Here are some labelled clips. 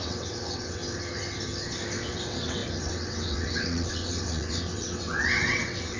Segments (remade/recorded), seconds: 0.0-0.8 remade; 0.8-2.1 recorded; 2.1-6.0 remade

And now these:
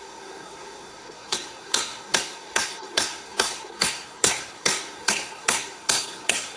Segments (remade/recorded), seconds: 0.0-6.6 remade

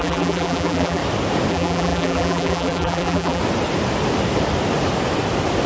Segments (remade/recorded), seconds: 0.0-1.0 remade; 1.0-1.5 recorded; 1.5-3.4 remade; 3.4-5.7 recorded